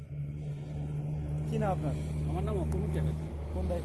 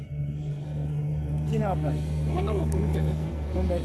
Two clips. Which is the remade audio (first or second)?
second